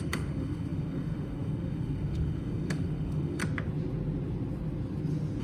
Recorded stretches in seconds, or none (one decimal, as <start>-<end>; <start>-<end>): 3.4-5.4